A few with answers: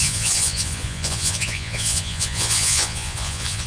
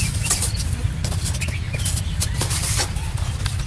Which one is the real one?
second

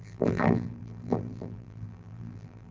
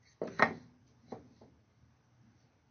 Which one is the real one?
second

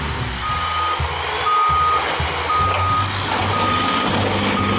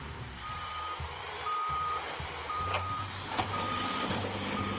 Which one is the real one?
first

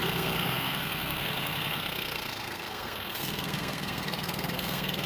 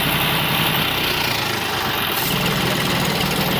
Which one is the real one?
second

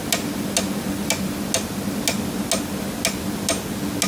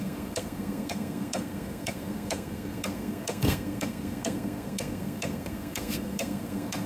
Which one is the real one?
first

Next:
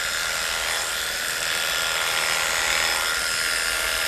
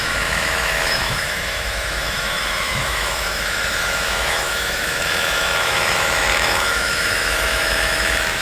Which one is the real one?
first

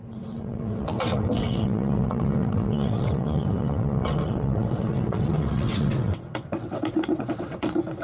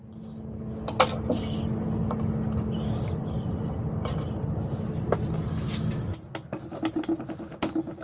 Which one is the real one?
second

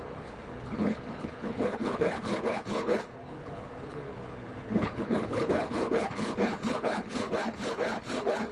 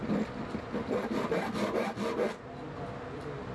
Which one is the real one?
second